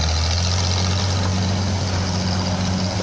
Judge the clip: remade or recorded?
recorded